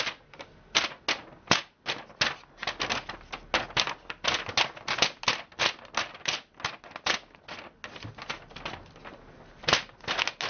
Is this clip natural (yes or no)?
yes